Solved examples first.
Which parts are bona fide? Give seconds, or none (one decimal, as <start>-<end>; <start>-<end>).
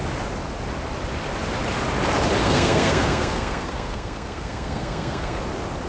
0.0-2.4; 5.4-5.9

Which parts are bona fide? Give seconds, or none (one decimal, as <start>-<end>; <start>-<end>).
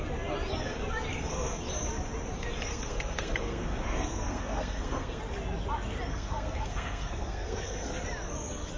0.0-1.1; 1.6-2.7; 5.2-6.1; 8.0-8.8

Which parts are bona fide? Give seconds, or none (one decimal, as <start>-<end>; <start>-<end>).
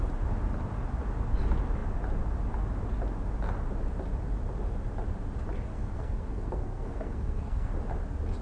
0.0-5.7; 7.7-8.4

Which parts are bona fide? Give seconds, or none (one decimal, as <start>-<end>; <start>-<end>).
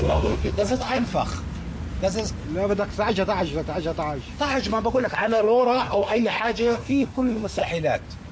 1.1-4.9; 7.6-8.3